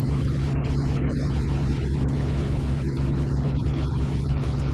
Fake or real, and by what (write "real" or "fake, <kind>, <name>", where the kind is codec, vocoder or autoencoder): fake, codec, HILCodec